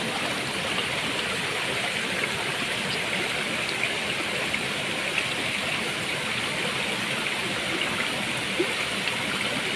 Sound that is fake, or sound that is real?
real